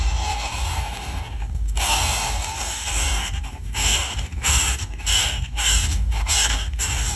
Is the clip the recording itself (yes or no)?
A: no